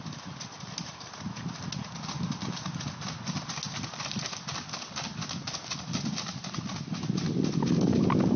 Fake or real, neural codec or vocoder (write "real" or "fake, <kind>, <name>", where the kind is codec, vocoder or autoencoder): real